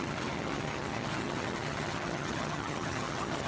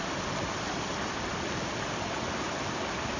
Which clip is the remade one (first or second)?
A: first